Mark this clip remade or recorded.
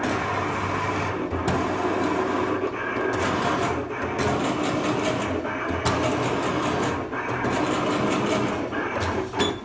recorded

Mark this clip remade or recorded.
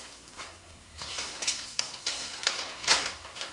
remade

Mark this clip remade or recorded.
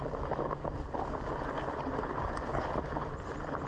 recorded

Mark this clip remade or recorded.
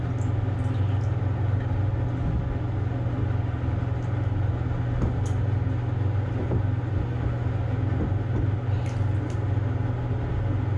recorded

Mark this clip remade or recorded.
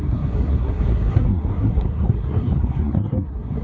remade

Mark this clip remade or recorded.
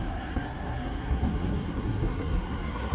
remade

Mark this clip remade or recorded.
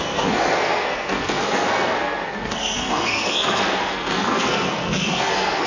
remade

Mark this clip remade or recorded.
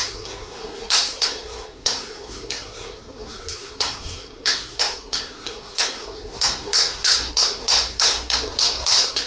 remade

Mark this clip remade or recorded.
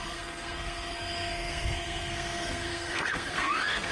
remade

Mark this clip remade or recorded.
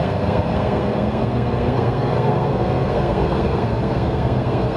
remade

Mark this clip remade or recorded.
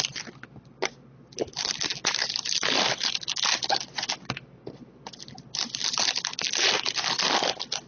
recorded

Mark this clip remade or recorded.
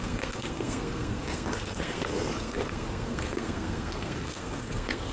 remade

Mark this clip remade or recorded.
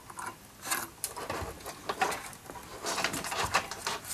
recorded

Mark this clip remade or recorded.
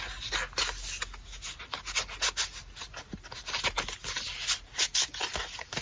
recorded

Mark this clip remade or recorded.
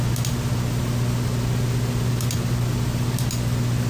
recorded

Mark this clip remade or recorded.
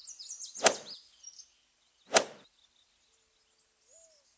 recorded